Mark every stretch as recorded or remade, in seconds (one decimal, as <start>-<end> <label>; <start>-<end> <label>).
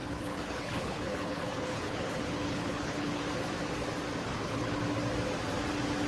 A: 0.0-3.2 remade; 3.2-4.3 recorded; 4.3-4.8 remade; 4.8-6.1 recorded